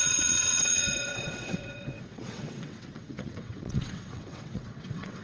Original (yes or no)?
no